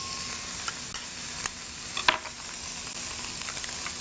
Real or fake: real